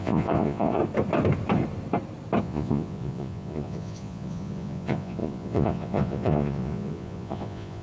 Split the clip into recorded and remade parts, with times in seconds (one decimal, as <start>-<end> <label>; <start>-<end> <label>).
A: 0.0-0.8 remade; 0.8-2.4 recorded; 2.4-7.8 remade